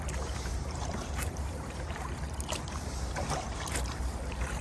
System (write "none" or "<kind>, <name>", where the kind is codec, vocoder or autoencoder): vocoder, BigVGAN v2